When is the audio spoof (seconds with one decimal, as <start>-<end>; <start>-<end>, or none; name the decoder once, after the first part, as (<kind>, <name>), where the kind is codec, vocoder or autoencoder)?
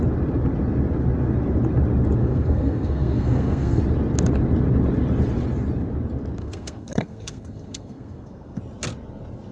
2.2-3.8 (codec, SNAC); 6.4-8.6